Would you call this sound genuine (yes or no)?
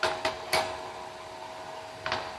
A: yes